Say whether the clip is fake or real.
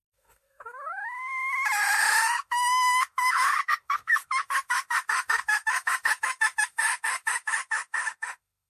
fake